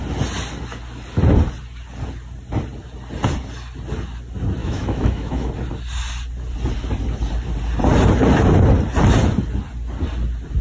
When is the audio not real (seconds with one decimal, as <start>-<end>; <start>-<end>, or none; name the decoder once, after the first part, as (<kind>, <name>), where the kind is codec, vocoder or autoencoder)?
4.6-5.5 (autoencoder, DAC-VAE)